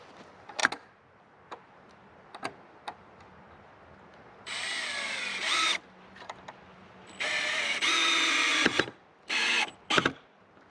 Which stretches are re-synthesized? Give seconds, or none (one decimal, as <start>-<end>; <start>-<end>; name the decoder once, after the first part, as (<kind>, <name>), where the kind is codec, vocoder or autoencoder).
none